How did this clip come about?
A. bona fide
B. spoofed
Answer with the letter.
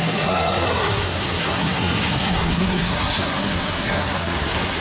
B